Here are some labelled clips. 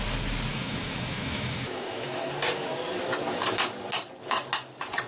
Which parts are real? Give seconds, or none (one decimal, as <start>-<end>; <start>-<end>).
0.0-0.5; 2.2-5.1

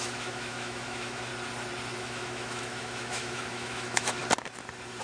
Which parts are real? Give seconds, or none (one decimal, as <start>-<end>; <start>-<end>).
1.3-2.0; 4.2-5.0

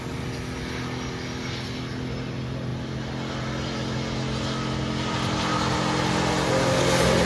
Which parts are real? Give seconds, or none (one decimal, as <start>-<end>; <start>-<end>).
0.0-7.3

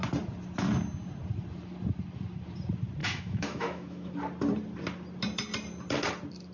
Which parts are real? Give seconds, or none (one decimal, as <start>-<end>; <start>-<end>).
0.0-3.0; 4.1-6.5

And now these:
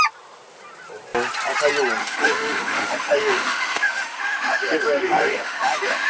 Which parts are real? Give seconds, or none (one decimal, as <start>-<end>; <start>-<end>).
0.0-2.0

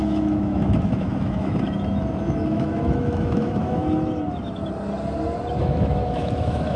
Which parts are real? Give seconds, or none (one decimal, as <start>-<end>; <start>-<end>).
4.6-5.6